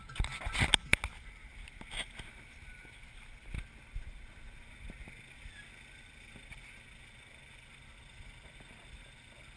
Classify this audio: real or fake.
real